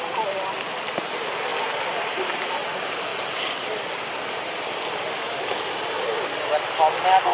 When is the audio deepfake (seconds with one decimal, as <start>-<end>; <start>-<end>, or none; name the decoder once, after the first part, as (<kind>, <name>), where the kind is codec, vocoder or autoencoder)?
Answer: none